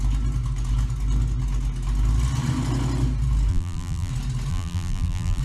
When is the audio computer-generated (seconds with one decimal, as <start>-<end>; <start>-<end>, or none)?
3.5-4.1; 4.5-5.4